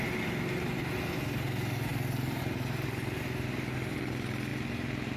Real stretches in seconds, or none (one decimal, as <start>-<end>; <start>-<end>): 0.0-5.2